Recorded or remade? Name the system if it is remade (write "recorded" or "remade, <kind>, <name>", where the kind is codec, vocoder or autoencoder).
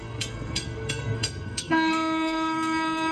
remade, codec, SNAC